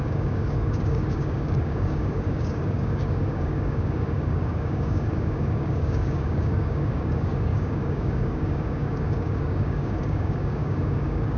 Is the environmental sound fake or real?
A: fake